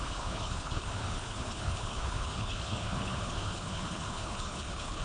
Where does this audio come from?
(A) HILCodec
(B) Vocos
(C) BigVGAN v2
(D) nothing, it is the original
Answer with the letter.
A